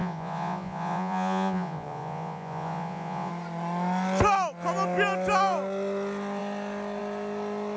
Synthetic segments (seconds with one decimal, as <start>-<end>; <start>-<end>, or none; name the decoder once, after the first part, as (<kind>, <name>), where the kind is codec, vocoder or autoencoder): 0.0-3.3 (vocoder, Vocos)